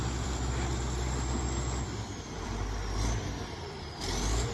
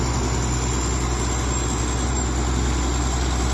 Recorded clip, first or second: second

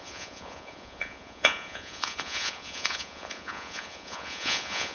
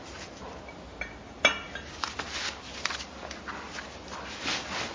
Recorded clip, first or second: second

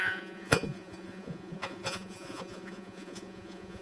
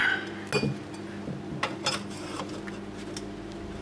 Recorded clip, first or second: second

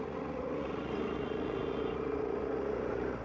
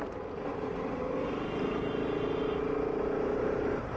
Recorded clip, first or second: second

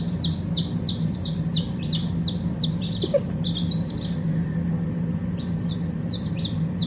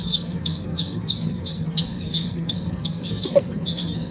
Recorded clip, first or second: first